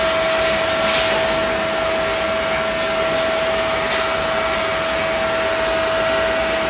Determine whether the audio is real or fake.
real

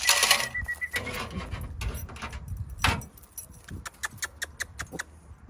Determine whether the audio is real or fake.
real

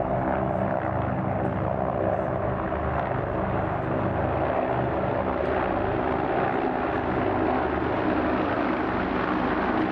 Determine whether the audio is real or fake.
real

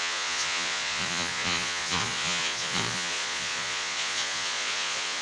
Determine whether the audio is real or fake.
fake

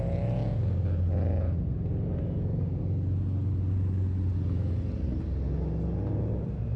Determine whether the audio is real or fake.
real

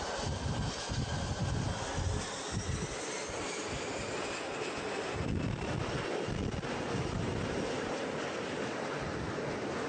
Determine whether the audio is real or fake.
real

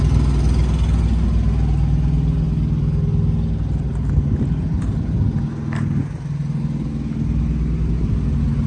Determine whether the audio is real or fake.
real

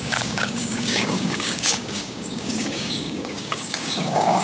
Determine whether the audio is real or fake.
fake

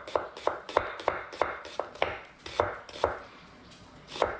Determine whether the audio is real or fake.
real